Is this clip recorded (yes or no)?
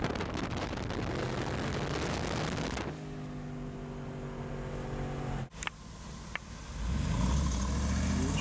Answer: yes